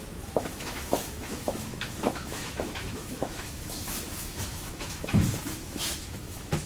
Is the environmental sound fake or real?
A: fake